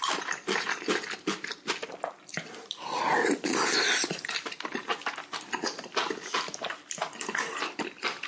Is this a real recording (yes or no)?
yes